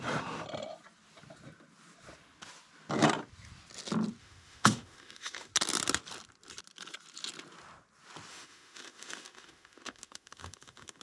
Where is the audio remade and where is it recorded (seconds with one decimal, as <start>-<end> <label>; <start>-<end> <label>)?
0.0-4.2 recorded; 4.2-5.5 remade; 5.5-8.3 recorded; 8.3-11.0 remade